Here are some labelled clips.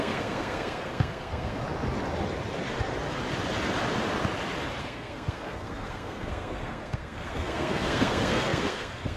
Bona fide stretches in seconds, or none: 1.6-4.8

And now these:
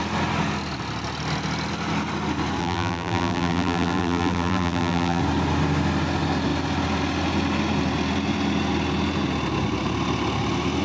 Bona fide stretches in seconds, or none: 0.0-2.6; 5.2-10.8

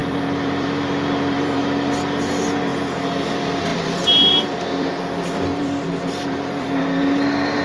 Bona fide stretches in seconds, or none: 1.6-3.7; 4.9-5.5; 7.0-7.6

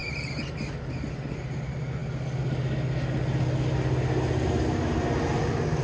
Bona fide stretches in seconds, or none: 0.0-5.8

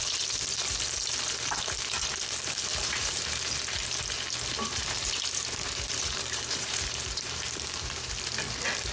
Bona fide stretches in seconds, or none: 0.0-2.7; 3.5-4.5; 8.1-8.9

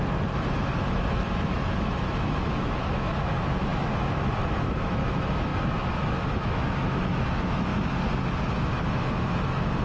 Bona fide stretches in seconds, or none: 7.7-8.4

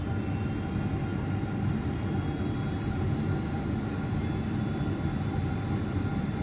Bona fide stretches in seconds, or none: 0.0-6.4